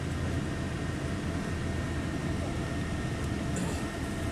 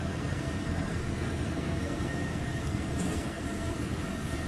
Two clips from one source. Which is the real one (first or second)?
first